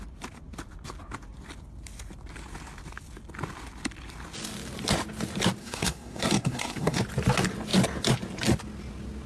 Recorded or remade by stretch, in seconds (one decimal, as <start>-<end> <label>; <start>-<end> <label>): 0.0-5.6 recorded; 5.6-7.0 remade; 7.0-9.3 recorded